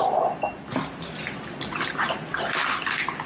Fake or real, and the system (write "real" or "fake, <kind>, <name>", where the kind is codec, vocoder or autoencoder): real